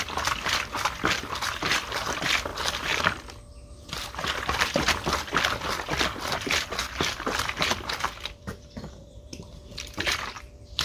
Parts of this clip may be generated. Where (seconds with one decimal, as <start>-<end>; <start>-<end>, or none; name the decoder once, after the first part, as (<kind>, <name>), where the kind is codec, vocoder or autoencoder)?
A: 0.0-2.5 (vocoder, BigVGAN v2); 6.7-10.8